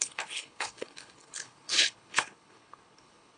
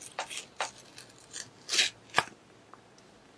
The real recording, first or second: second